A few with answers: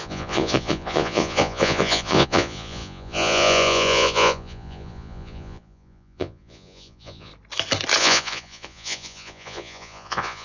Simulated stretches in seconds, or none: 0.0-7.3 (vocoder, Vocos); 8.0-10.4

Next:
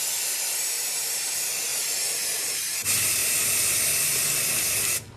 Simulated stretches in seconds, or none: 0.0-1.7 (vocoder, BigVGAN v2); 2.2-3.2

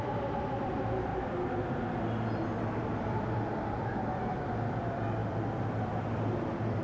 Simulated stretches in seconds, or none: 0.0-1.1 (vocoder, BigVGAN v2); 2.8-6.8

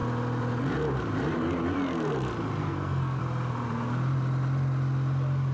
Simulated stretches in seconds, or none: 2.6-3.2 (codec, SNAC)

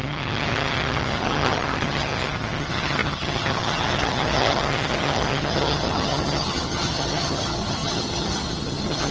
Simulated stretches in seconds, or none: 0.0-9.1 (vocoder, HiFi-GAN)

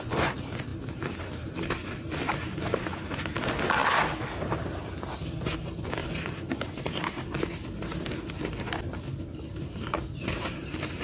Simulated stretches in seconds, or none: none

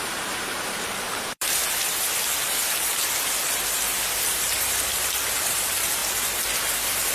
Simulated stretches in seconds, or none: 0.0-1.6 (vocoder, BigVGAN v2); 5.4-6.0

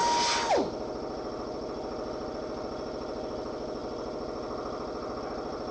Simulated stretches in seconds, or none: none